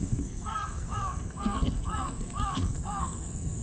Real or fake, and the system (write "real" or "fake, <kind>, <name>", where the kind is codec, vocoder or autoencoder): fake, codec, SNAC